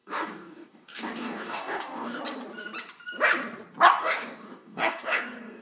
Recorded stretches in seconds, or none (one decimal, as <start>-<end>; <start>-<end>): 2.2-4.0